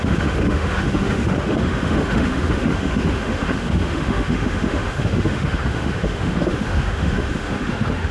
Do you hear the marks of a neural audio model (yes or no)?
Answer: yes